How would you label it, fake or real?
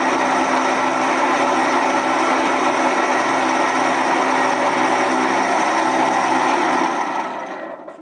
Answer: real